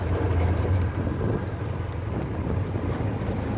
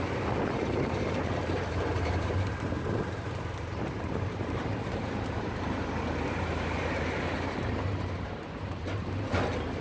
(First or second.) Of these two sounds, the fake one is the second